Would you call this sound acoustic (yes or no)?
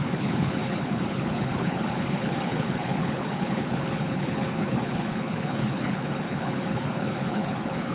no